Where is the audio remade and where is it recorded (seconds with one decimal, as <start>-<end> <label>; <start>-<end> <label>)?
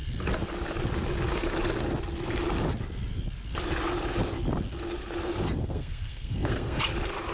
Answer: 0.0-5.6 recorded; 5.6-6.8 remade; 6.8-7.3 recorded